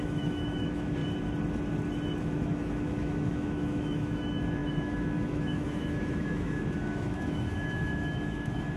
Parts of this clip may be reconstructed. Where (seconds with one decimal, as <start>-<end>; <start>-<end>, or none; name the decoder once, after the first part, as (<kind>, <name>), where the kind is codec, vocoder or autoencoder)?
0.0-1.0 (autoencoder, DAC-VAE); 2.2-8.8